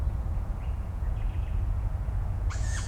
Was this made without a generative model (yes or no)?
no